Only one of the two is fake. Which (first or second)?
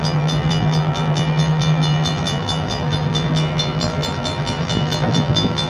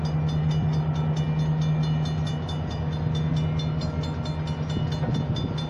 first